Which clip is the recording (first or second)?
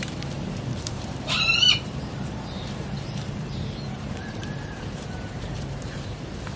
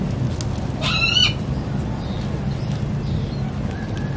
second